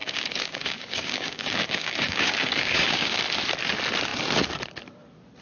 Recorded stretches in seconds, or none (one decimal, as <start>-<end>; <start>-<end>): 3.2-5.4